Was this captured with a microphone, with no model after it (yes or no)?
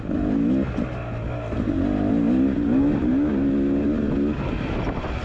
yes